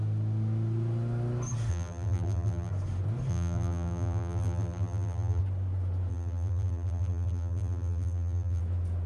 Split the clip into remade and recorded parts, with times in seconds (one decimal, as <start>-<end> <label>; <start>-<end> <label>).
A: 0.0-1.7 recorded; 1.7-2.7 remade; 2.7-3.3 recorded; 3.3-5.4 remade; 5.4-6.1 recorded; 6.1-8.6 remade; 8.6-9.1 recorded